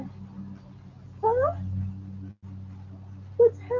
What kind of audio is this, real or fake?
real